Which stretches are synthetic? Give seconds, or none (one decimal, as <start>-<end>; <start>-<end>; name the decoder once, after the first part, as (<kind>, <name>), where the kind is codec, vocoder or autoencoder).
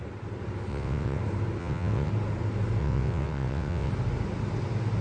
0.7-1.2 (vocoder, WaveNeXt); 1.6-2.1; 2.8-3.9